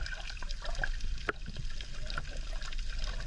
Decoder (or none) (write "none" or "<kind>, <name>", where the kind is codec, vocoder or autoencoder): none